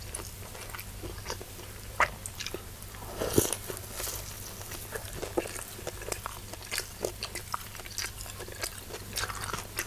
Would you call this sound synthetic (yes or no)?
no